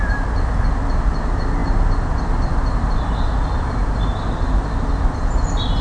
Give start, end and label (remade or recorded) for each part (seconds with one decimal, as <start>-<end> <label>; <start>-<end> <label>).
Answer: 0.0-5.8 recorded